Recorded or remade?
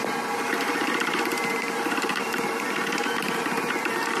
remade